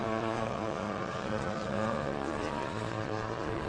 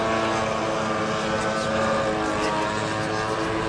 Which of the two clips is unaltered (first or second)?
second